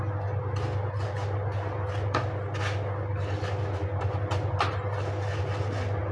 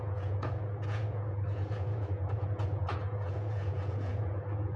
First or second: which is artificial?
second